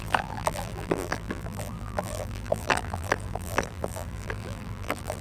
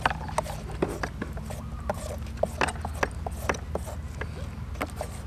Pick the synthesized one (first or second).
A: first